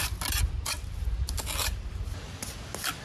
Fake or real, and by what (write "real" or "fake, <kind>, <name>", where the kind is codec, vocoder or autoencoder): real